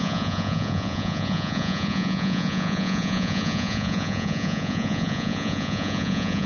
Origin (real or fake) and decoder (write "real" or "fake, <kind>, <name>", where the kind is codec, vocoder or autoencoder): fake, vocoder, Vocos